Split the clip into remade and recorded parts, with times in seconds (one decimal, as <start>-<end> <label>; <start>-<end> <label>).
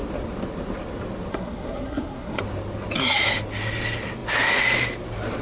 0.0-1.3 recorded; 1.3-2.4 remade; 2.4-5.4 recorded